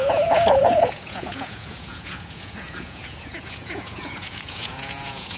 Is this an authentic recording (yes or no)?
no